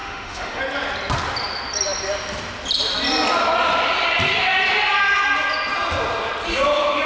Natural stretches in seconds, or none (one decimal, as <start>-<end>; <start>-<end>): 0.6-7.1